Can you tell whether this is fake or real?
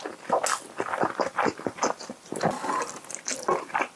real